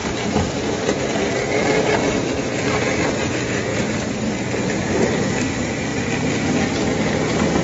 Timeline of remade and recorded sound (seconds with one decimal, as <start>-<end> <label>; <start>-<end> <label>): 0.0-0.6 remade; 0.6-3.7 recorded; 3.7-4.3 remade; 4.3-7.6 recorded